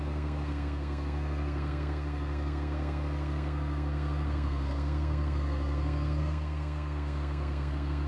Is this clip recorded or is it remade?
remade